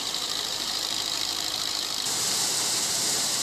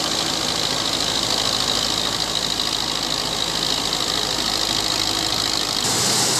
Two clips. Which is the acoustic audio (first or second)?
second